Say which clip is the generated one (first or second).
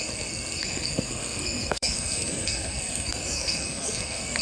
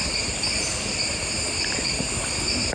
first